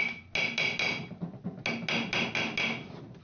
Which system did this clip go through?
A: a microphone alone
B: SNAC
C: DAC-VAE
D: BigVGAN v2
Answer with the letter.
A